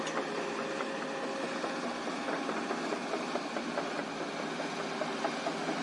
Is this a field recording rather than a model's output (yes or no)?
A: yes